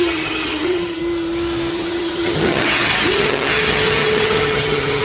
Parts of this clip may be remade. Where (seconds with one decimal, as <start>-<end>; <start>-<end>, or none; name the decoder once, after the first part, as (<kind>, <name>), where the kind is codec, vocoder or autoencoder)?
0.0-1.0 (vocoder, HiFi-GAN); 1.7-5.0